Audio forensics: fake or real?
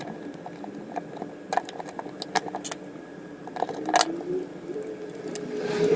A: real